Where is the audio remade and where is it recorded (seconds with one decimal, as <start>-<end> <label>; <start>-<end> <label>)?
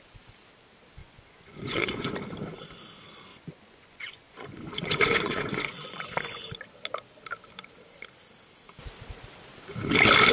0.0-1.0 recorded; 1.0-2.1 remade; 2.1-3.3 recorded; 3.3-6.4 remade; 6.4-10.3 recorded